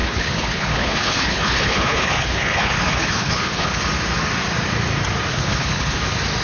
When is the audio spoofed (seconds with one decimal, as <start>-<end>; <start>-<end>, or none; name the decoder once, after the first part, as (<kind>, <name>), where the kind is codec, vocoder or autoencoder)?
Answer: 0.0-3.8 (codec, HILCodec); 5.3-6.0